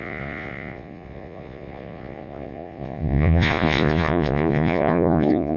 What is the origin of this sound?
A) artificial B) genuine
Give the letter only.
A